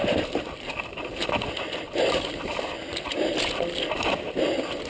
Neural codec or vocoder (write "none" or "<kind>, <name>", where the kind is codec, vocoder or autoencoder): none